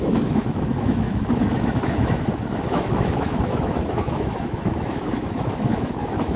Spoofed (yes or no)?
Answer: yes